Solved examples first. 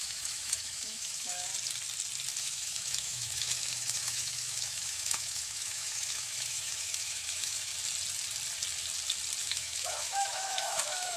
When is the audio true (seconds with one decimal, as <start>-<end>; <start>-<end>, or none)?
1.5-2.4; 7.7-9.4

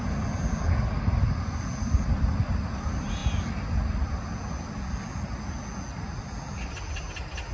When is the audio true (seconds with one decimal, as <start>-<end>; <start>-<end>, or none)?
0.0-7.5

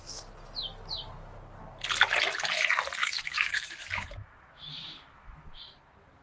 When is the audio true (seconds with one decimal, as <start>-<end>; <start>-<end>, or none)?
0.0-3.0; 5.6-6.2

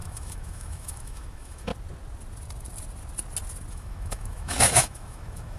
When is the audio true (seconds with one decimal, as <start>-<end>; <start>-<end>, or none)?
1.7-3.7

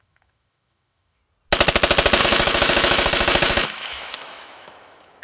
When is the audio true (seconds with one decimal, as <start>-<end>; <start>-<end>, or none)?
1.2-2.2

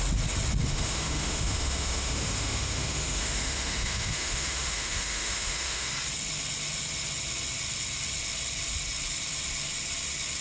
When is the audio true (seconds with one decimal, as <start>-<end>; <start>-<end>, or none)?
0.0-0.6; 5.9-10.4